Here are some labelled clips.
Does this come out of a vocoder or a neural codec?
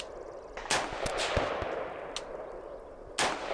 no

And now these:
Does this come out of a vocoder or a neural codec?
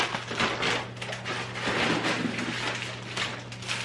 no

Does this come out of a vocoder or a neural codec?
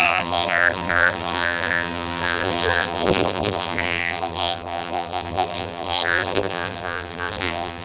yes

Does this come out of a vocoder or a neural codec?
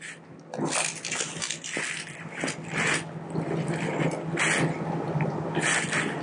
no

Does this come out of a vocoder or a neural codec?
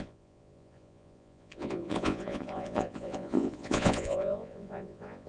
yes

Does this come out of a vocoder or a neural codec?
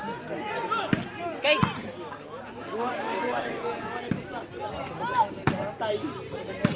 no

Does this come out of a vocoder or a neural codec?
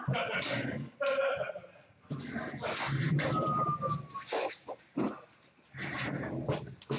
yes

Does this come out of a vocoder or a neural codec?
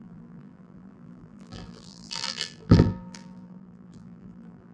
yes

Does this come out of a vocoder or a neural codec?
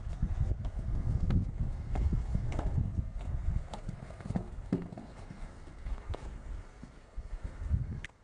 yes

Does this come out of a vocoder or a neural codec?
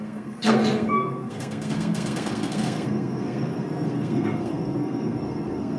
yes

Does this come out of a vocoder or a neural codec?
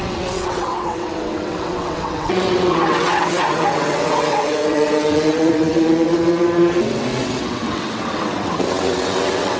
yes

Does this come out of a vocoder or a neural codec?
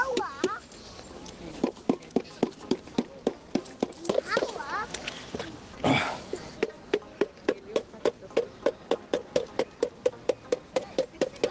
no